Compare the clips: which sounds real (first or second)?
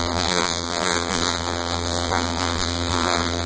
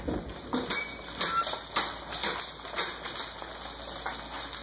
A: second